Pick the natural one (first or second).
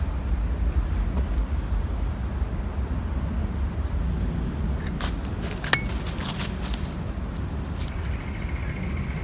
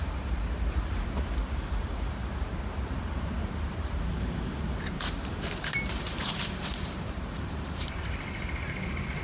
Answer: first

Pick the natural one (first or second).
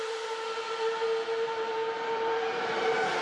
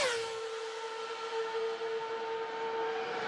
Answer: second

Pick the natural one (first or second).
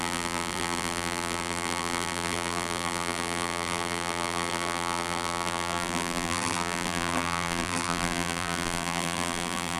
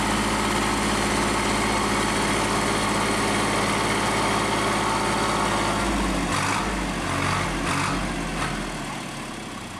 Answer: second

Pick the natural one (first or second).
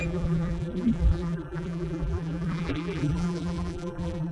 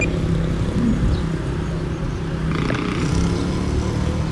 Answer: second